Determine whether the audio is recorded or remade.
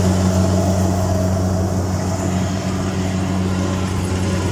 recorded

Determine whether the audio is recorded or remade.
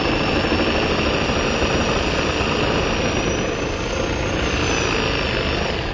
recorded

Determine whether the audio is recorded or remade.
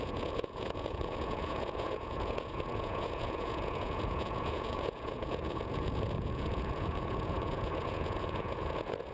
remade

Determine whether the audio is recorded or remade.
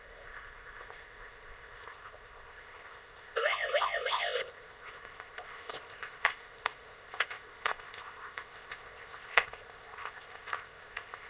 remade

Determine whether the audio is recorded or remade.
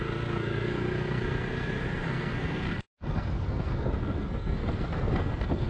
remade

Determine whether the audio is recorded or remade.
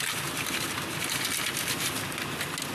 recorded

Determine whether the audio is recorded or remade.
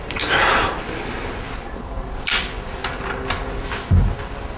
recorded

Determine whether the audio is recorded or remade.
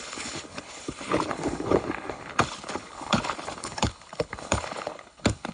remade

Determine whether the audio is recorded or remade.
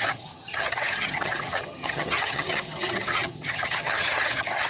remade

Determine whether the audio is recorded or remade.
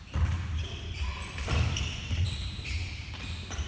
recorded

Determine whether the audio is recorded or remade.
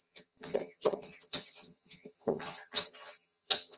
remade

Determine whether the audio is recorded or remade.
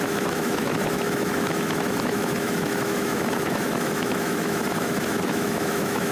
remade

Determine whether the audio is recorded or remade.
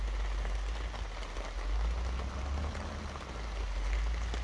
recorded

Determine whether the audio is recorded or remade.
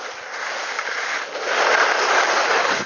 recorded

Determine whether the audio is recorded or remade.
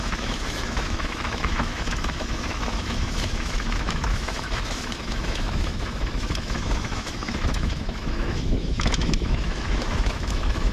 remade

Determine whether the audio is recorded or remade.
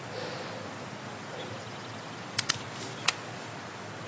recorded